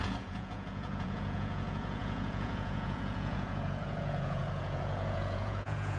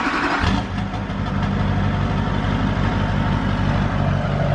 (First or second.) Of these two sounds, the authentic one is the second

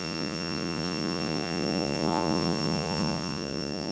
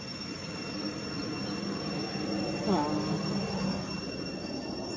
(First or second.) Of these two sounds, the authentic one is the second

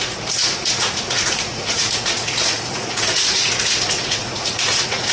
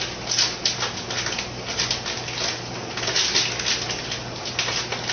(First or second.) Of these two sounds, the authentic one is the second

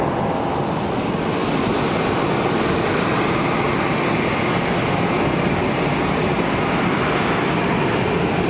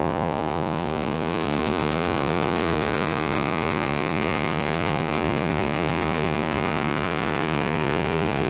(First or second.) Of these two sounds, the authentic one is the first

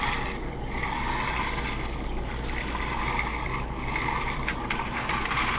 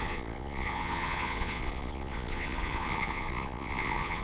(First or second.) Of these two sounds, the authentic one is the first